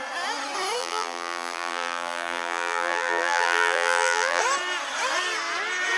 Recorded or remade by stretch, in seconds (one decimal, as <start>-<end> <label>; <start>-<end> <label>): 0.0-0.8 recorded; 0.8-4.4 remade; 4.4-6.0 recorded